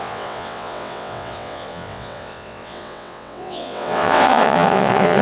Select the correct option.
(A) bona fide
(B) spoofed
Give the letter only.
B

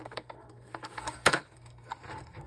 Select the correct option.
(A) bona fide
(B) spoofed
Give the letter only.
B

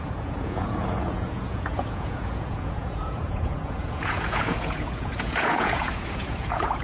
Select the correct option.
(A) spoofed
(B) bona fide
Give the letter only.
A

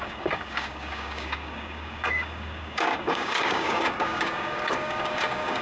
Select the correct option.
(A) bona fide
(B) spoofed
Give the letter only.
B